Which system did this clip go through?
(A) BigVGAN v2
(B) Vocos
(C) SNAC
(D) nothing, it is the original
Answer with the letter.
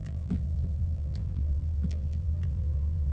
A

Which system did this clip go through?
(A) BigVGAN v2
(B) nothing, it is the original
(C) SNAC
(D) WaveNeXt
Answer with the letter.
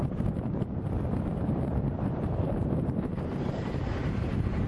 A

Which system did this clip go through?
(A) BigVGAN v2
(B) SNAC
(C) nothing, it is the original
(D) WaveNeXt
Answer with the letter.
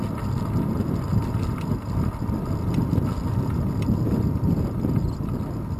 C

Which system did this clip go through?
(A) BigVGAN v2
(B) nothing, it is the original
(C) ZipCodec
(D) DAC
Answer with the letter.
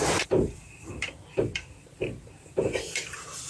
A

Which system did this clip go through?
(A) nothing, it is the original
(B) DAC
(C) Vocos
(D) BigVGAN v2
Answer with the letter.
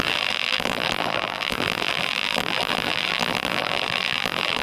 D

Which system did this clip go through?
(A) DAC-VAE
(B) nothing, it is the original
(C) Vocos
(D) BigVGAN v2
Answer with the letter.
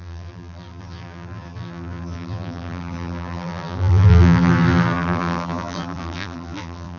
D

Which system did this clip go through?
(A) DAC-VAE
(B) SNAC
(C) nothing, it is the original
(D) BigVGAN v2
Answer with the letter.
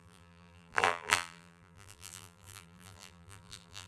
D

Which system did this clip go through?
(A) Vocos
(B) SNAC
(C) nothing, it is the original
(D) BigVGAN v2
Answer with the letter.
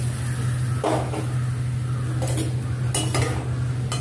C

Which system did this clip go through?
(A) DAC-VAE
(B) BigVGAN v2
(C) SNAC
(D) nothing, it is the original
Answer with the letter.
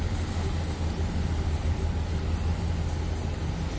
D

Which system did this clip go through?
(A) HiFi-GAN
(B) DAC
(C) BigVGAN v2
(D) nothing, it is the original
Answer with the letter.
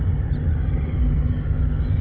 D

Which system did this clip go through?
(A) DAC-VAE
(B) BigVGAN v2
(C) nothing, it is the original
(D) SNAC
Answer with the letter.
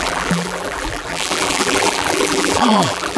B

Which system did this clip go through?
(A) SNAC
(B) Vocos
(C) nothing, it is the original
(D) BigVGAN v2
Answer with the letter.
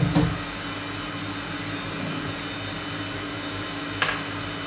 C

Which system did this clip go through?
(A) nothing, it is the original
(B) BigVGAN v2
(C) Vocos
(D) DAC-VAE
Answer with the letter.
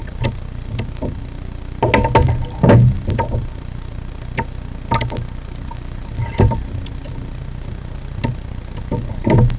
A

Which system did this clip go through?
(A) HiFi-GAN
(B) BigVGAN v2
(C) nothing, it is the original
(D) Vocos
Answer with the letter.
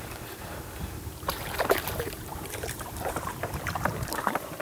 B